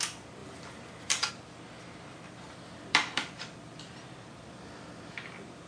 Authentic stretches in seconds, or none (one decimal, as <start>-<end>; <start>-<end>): 0.0-0.4; 1.3-2.1

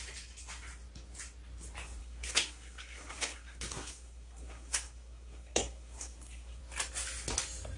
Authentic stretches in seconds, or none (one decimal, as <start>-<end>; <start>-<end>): 0.0-2.0; 6.6-7.8

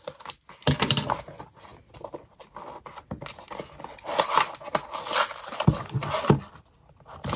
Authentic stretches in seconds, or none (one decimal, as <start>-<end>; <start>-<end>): 0.0-7.4

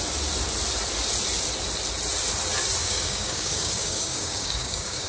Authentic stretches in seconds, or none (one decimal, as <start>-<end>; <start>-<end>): 0.0-2.8

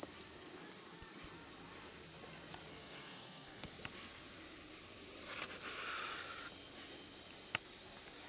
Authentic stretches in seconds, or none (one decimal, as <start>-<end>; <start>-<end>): 0.0-2.7; 3.7-8.3

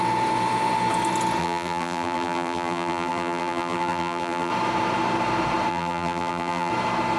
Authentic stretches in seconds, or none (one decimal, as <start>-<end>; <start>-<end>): 0.0-1.4; 4.5-5.7; 6.7-7.2